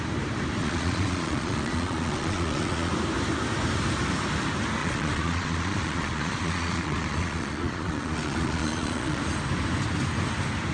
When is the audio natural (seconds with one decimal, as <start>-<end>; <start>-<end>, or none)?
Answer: 0.0-0.6; 2.9-4.8; 9.2-10.7